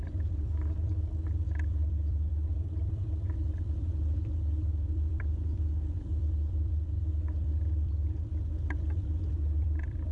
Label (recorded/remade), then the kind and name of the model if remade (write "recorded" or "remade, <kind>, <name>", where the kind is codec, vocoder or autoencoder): remade, vocoder, BigVGAN v2